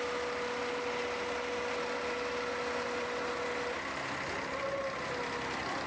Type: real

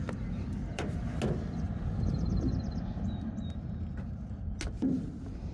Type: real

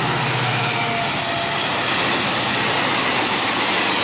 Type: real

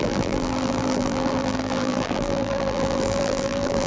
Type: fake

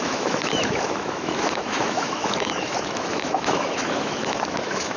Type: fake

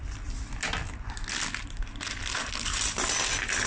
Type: real